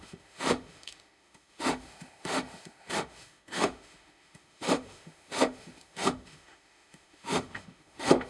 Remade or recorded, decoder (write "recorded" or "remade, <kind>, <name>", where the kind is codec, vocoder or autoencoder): remade, autoencoder, DAC-VAE